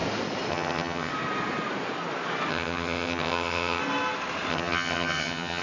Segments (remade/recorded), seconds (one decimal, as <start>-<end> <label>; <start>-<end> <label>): 0.0-0.5 recorded; 0.5-1.1 remade; 1.1-2.5 recorded; 2.5-3.8 remade; 3.8-4.5 recorded; 4.5-5.6 remade